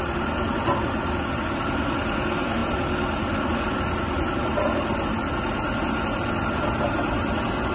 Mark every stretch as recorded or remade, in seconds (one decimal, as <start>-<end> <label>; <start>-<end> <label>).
0.0-7.7 recorded